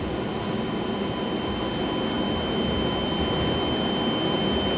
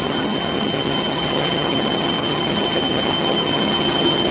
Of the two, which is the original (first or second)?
first